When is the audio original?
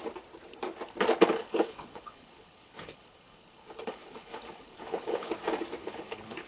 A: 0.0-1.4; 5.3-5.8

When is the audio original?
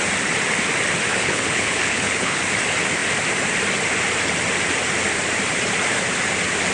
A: 0.0-1.1; 2.4-6.7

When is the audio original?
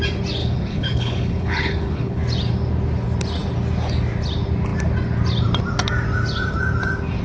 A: 0.0-0.4; 2.2-7.2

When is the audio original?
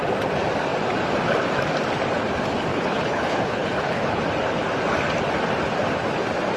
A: 0.0-2.7; 4.2-6.6